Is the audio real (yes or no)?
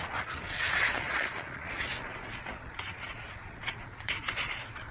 no